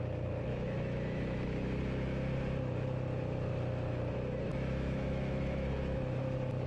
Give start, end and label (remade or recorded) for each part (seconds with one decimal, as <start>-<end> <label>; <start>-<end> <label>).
0.0-0.5 recorded; 0.5-1.8 remade; 1.8-4.5 recorded; 4.5-6.2 remade; 6.2-6.7 recorded